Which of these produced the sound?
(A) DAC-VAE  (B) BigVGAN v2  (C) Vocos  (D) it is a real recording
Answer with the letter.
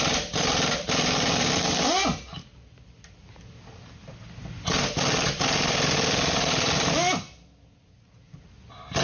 D